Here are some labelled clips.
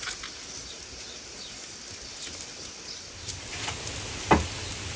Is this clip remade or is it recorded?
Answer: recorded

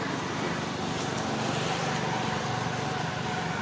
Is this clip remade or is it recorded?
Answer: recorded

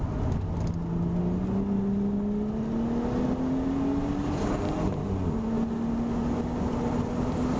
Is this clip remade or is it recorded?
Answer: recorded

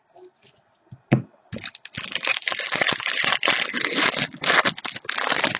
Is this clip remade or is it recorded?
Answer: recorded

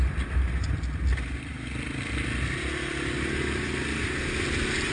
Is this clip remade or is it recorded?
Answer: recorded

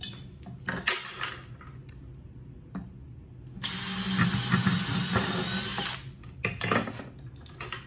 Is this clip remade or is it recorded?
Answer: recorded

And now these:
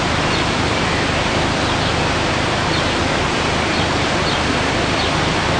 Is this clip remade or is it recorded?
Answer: remade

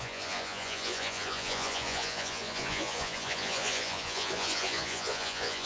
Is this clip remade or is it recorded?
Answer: remade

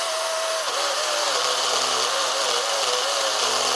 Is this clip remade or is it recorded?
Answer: remade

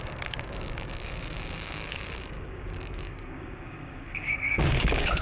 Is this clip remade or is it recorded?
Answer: remade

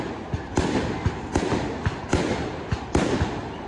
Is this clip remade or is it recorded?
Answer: recorded